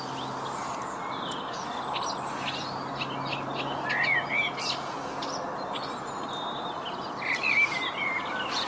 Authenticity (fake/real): real